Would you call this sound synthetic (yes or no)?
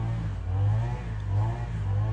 no